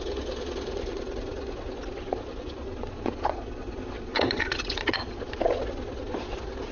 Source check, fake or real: fake